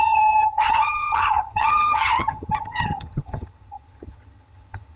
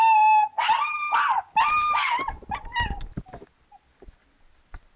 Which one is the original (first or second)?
second